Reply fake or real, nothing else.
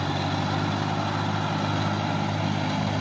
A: real